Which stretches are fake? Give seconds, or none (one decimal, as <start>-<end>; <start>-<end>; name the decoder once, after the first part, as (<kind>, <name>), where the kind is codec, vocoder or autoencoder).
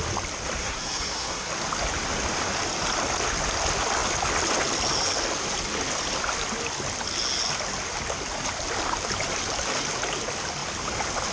0.6-1.5 (codec, SNAC)